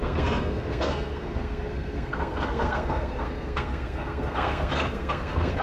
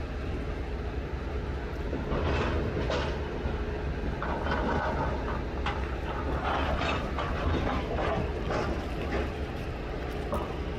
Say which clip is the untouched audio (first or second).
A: second